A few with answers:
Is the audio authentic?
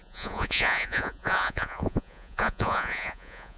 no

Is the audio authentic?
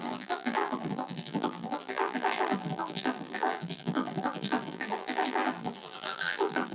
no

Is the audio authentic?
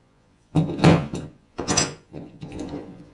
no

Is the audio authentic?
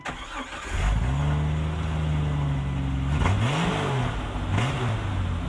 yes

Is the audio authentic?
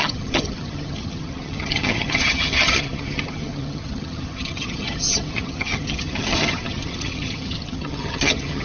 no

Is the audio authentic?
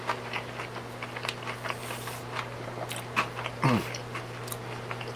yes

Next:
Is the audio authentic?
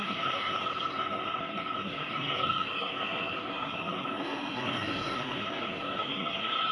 no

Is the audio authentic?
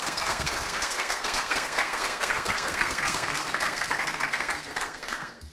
no